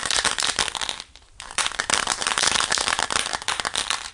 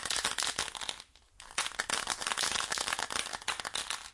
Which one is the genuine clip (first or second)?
second